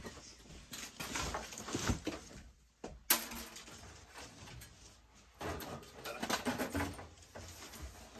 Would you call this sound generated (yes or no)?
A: no